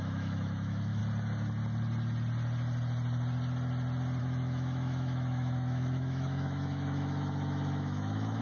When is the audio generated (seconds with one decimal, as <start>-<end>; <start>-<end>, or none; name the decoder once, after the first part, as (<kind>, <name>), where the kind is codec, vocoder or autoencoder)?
0.0-1.0 (autoencoder, DAC-VAE); 4.2-8.4